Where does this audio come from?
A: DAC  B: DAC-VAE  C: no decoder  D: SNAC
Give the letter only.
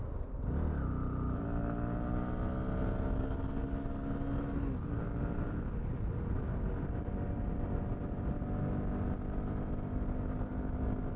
C